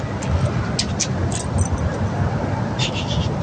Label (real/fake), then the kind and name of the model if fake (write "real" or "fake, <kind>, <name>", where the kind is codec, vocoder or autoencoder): real